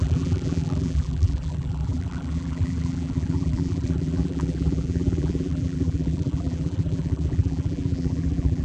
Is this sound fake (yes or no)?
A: yes